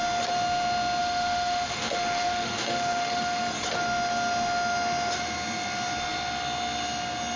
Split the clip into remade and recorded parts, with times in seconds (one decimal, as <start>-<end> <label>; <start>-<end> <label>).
0.0-1.0 recorded; 1.0-3.4 remade; 3.4-7.4 recorded